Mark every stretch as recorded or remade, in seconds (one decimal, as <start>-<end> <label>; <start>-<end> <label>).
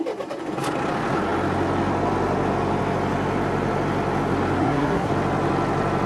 0.0-4.6 recorded; 4.6-5.1 remade; 5.1-6.1 recorded